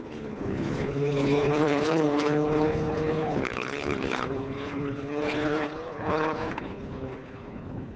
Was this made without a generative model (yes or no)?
no